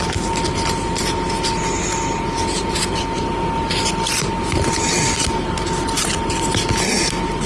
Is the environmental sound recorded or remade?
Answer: recorded